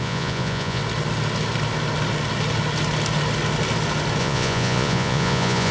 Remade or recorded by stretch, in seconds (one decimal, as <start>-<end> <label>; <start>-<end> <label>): 0.0-0.8 remade; 0.8-4.2 recorded; 4.2-5.7 remade